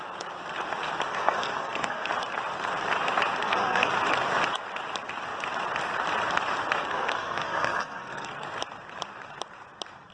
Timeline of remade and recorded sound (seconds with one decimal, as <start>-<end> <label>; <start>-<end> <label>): 0.0-1.1 recorded; 1.1-2.1 remade; 2.1-3.4 recorded; 3.4-3.9 remade; 3.9-6.8 recorded; 6.8-8.4 remade; 8.4-10.1 recorded

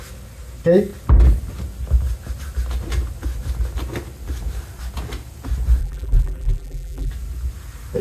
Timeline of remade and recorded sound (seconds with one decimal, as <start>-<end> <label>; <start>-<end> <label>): 0.0-5.8 recorded; 5.8-7.1 remade; 7.1-8.0 recorded

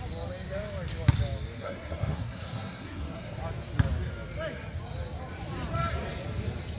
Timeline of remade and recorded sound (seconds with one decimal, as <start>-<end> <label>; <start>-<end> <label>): 0.0-1.6 recorded; 1.6-3.4 remade; 3.4-6.8 recorded

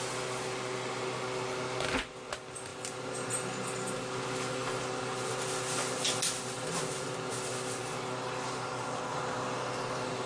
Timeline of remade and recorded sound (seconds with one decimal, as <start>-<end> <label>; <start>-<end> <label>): 0.0-10.3 recorded

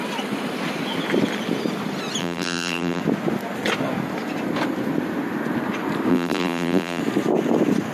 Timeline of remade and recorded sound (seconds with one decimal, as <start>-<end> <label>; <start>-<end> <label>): 0.0-2.2 recorded; 2.2-3.0 remade; 3.0-6.1 recorded; 6.1-7.0 remade; 7.0-7.9 recorded

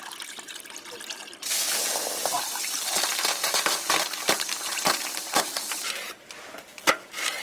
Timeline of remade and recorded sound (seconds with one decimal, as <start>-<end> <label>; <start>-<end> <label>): 0.0-3.1 recorded; 3.1-5.9 remade; 5.9-7.4 recorded

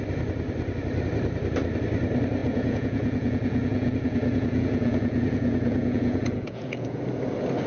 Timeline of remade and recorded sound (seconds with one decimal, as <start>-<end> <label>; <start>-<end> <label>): 0.0-2.4 recorded; 2.4-7.0 remade; 7.0-7.7 recorded